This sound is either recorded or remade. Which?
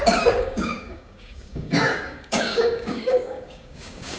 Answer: remade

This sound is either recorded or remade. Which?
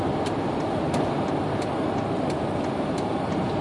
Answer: recorded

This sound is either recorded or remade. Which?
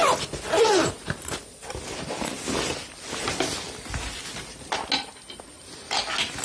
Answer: recorded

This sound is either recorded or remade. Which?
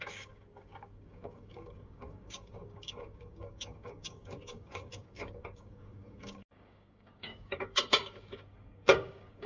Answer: remade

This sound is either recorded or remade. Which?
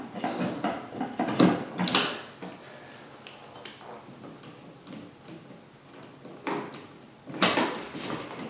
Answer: recorded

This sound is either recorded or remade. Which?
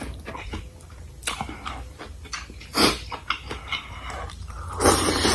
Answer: recorded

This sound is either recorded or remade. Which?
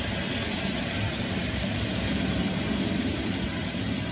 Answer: recorded